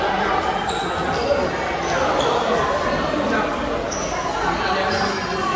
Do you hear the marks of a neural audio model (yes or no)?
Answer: no